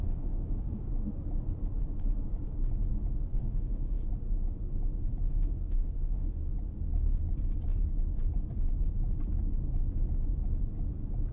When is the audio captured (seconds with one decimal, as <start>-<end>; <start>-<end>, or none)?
0.9-3.4; 4.0-5.3; 6.4-11.3